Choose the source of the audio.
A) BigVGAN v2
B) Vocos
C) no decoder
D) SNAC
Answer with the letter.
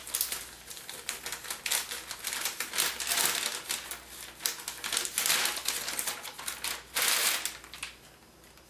C